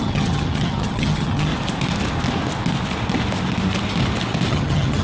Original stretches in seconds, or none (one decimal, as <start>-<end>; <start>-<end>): 1.5-4.5